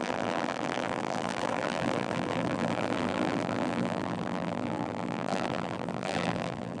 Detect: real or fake fake